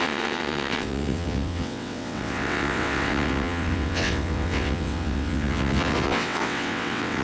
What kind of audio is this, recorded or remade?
remade